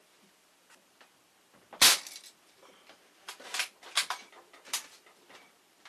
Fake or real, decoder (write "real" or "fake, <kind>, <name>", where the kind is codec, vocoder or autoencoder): real